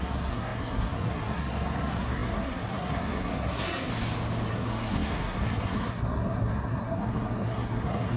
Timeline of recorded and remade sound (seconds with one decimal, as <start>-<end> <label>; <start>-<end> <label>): 0.0-3.9 remade; 3.9-4.5 recorded; 4.5-8.2 remade